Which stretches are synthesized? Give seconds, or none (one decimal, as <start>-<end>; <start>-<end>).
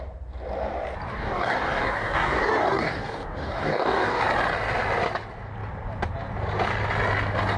1.1-4.2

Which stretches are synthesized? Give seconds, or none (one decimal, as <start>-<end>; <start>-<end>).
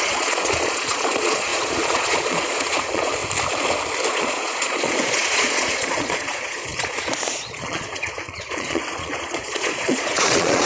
0.0-3.2; 4.1-10.7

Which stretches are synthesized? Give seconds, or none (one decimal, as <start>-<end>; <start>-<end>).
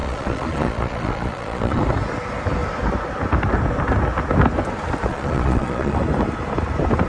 0.0-1.8; 5.1-6.0